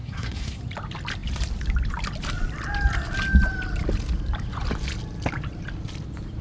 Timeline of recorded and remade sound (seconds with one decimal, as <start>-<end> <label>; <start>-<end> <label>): 0.0-0.6 remade; 0.6-6.4 recorded

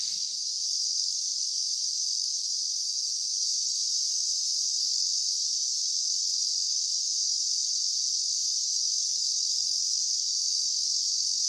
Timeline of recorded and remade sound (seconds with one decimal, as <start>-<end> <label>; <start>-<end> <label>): 0.0-3.8 remade; 3.8-4.4 recorded; 4.4-11.5 remade

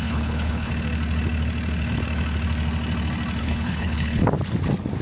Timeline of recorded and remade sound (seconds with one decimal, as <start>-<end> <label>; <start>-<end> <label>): 0.0-0.7 remade; 0.7-3.4 recorded; 3.4-4.2 remade; 4.2-5.0 recorded

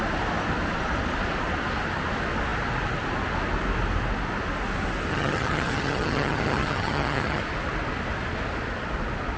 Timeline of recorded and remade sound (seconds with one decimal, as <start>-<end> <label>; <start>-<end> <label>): 0.0-5.1 recorded; 5.1-7.4 remade; 7.4-9.4 recorded

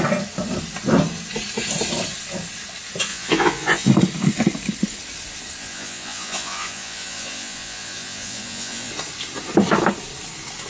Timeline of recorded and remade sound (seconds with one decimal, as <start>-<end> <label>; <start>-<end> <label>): 0.0-3.1 recorded; 3.1-3.9 remade; 3.9-5.6 recorded; 5.6-8.9 remade; 8.9-10.7 recorded